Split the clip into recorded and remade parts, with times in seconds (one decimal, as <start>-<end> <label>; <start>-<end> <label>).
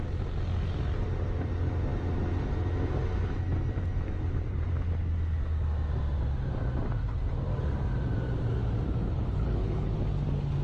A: 0.0-9.0 recorded; 9.0-9.9 remade; 9.9-10.6 recorded